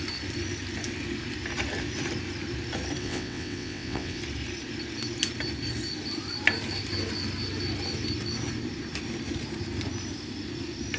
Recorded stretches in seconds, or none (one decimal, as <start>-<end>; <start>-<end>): 0.0-3.0; 4.2-11.0